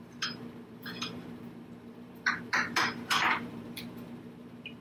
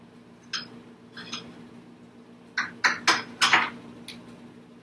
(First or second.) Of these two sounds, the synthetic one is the first